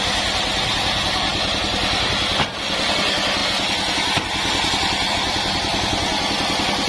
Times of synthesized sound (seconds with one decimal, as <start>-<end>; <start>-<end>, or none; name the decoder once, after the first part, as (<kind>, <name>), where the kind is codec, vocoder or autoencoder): none